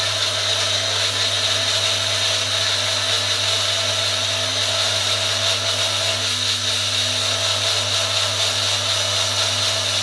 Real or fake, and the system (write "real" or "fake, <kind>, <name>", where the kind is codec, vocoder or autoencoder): real